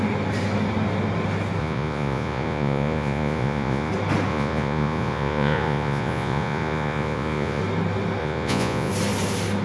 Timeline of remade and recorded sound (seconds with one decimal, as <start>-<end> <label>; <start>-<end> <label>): 0.0-1.6 recorded; 1.6-3.9 remade; 3.9-4.3 recorded; 4.3-7.6 remade; 7.6-8.2 recorded; 8.2-8.9 remade; 8.9-9.6 recorded